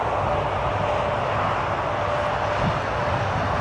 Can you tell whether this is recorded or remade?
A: recorded